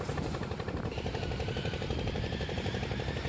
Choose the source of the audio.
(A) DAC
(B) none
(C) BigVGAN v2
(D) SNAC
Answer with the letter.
C